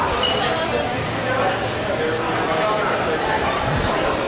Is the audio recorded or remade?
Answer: recorded